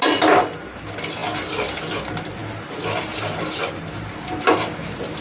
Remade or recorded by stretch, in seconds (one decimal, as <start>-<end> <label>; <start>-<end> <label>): 0.0-5.2 recorded